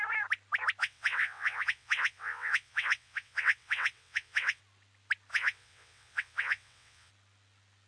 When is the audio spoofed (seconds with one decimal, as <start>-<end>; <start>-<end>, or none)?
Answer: 0.8-4.6; 5.3-7.1